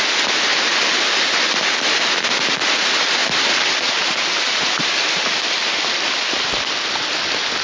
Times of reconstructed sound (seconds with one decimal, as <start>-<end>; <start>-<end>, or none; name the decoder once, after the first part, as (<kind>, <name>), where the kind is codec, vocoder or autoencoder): 0.5-1.7 (vocoder, BigVGAN v2); 3.2-5.2